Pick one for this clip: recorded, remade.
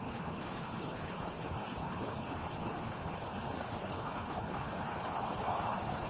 remade